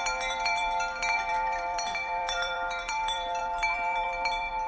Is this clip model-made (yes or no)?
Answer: yes